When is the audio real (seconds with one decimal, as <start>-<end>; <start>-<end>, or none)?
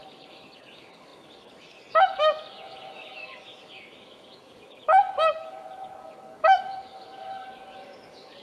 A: none